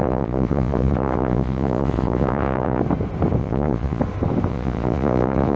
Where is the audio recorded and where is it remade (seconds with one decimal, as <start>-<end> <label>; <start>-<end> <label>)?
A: 0.0-2.8 remade; 2.8-3.4 recorded; 3.4-4.0 remade; 4.0-4.5 recorded; 4.5-5.6 remade